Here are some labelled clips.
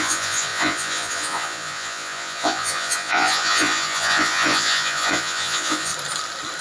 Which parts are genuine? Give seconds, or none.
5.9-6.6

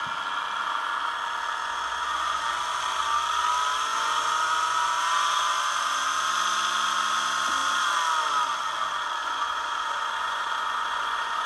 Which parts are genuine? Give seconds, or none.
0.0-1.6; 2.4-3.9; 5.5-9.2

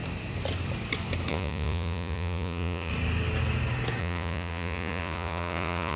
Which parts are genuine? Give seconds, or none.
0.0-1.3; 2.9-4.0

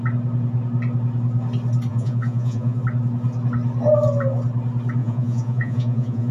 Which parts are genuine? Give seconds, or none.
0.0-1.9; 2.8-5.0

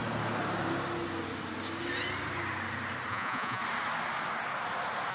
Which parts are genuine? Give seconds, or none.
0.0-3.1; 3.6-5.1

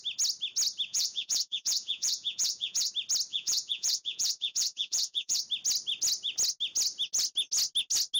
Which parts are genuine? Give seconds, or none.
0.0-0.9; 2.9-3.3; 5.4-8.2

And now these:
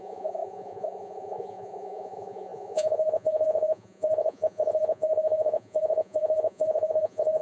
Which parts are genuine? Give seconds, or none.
none